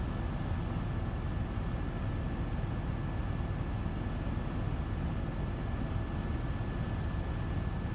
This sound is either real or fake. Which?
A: real